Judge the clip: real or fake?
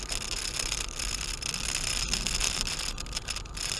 real